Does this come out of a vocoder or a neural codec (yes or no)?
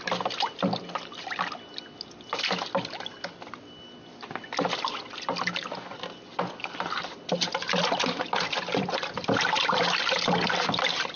no